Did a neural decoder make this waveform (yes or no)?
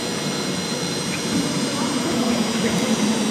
yes